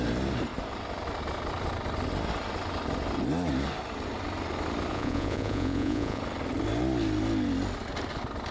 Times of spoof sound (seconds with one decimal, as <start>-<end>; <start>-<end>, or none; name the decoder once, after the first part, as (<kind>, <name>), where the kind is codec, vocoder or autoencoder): 4.9-6.2 (vocoder, Vocos)